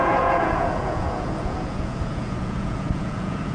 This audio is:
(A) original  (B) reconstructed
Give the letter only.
B